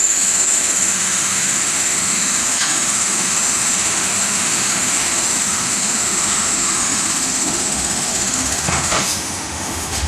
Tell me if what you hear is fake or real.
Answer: fake